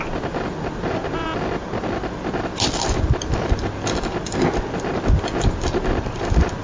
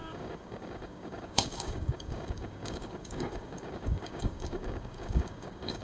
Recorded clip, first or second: first